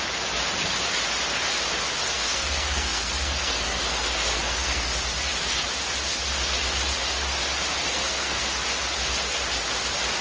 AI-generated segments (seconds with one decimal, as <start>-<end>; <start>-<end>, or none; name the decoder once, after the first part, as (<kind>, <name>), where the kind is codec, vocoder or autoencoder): 2.0-4.9 (codec, SNAC); 7.8-8.5